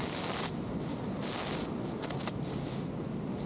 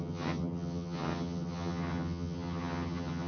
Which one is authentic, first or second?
first